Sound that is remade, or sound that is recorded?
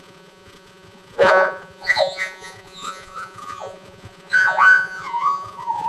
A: remade